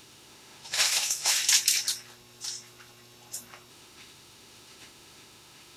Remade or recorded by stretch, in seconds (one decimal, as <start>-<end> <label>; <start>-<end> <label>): 0.0-1.4 remade; 1.4-3.7 recorded; 3.7-5.8 remade